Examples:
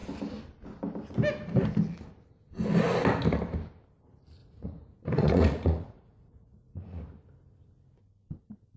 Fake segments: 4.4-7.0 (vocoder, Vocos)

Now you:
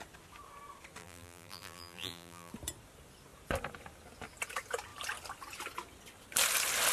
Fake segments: 1.0-2.5 (vocoder, BigVGAN v2)

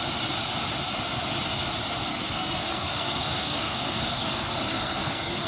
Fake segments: 2.1-5.5 (codec, SNAC)